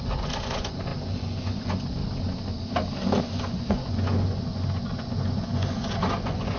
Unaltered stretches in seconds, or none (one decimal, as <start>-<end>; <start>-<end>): 2.0-3.2